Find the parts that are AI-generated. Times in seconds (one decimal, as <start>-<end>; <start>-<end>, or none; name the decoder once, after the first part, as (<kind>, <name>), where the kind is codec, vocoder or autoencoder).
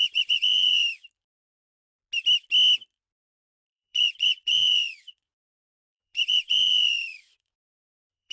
0.0-0.8 (vocoder, Vocos); 3.4-8.3